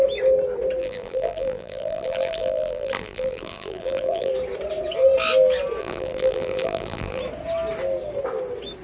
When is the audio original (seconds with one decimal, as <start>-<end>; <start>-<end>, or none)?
0.0-0.8; 4.3-5.8; 7.2-8.8